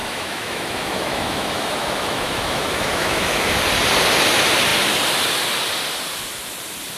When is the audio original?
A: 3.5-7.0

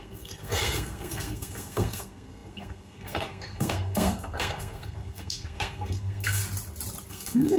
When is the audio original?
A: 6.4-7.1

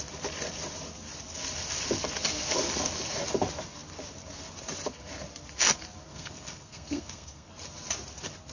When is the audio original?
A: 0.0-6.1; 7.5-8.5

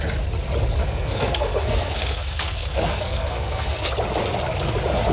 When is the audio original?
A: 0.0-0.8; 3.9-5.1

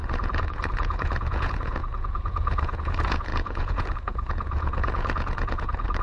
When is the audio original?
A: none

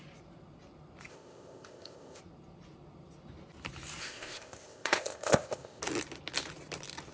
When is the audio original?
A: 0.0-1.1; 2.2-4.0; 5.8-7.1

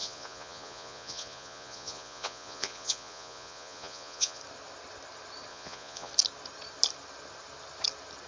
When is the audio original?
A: 4.4-5.5; 6.1-8.3